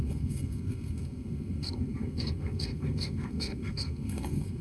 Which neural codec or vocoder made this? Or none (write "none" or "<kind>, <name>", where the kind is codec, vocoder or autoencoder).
codec, SNAC